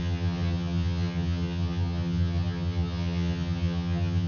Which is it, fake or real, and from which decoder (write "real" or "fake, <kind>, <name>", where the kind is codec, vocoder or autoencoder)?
fake, vocoder, HiFi-GAN